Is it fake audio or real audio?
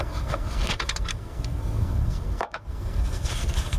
fake